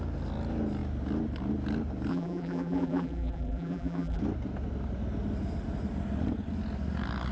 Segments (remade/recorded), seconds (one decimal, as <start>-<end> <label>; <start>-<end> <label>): 0.0-2.1 recorded; 2.1-4.2 remade; 4.2-7.3 recorded